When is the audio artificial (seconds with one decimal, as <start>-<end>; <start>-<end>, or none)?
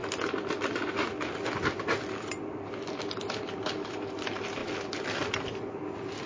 none